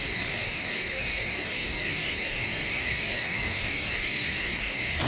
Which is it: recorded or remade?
remade